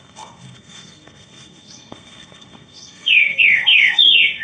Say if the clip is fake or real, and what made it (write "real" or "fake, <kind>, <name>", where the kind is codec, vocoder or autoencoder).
fake, codec, SNAC